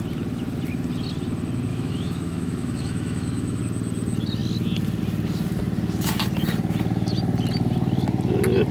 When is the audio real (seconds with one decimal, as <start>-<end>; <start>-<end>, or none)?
0.0-1.7; 3.6-8.7